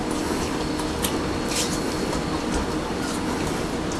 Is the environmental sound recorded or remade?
recorded